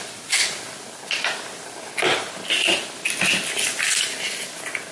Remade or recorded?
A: recorded